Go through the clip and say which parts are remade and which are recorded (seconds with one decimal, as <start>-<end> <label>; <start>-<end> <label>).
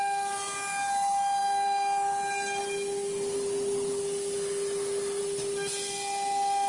0.0-6.7 recorded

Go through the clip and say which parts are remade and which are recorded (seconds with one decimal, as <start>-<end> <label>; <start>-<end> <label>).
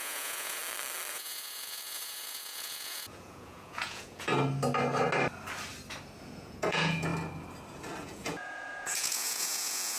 0.0-0.6 remade; 0.6-1.1 recorded; 1.1-4.3 remade; 4.3-6.2 recorded; 6.2-7.1 remade; 7.1-8.0 recorded; 8.0-10.0 remade